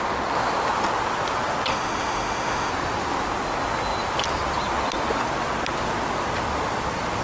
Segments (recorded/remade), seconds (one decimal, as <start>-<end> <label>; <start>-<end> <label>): 0.0-1.7 recorded; 1.7-2.7 remade; 2.7-7.2 recorded